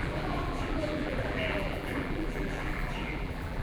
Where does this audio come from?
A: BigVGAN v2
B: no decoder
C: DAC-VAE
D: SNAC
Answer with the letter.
A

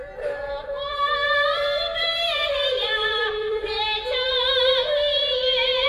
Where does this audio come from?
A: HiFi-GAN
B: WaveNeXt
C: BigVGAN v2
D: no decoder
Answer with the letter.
C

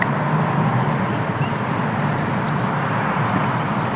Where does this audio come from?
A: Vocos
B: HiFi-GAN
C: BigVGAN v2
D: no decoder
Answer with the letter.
D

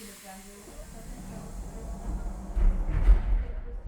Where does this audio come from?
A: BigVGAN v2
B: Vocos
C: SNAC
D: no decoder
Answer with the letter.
D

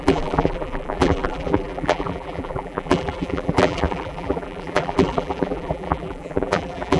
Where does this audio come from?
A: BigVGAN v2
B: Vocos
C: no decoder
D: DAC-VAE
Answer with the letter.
A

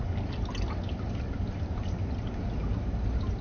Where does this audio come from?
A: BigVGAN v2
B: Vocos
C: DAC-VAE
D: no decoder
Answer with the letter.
D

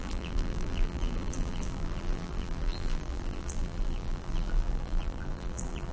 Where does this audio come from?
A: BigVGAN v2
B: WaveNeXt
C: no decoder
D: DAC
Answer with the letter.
A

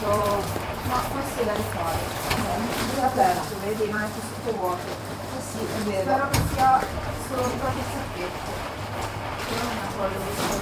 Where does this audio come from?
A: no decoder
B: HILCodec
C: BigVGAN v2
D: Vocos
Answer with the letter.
C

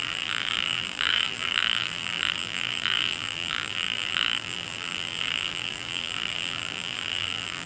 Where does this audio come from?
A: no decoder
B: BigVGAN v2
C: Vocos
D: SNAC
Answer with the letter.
B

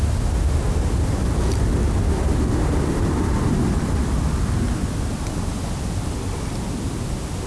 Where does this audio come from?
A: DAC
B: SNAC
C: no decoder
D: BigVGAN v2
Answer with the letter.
C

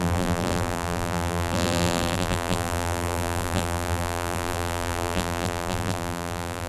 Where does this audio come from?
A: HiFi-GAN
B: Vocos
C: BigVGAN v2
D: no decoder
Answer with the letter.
C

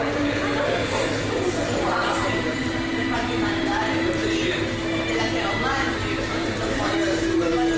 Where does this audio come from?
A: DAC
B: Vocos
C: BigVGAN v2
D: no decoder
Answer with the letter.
C